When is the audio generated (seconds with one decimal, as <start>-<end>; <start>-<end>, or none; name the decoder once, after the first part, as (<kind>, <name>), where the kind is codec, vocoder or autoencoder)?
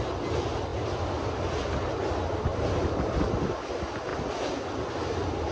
none